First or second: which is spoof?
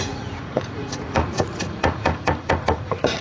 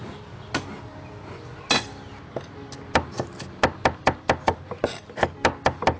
first